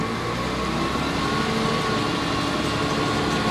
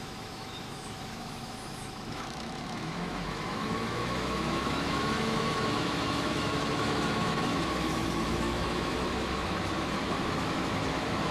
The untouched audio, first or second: first